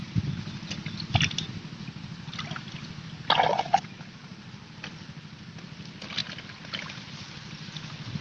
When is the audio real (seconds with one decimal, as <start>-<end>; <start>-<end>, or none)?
0.0-3.5; 4.5-8.2